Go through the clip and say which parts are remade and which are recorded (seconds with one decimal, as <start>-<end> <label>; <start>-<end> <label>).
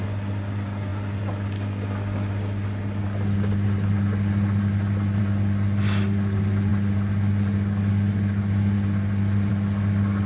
0.0-10.3 recorded